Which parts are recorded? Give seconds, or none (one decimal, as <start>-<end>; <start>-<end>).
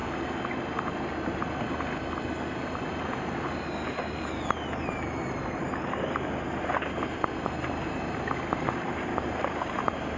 0.0-10.2